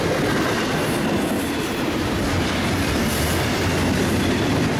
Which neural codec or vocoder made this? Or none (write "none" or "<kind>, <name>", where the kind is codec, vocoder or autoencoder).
none